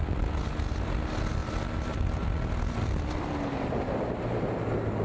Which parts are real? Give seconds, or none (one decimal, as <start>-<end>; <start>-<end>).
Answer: 0.0-1.4; 4.4-5.0